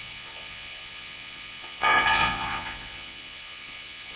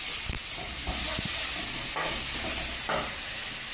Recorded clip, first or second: second